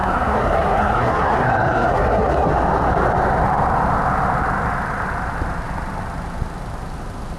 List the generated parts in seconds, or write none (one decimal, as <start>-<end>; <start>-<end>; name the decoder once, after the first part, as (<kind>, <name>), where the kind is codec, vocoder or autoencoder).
0.0-2.5 (codec, SNAC)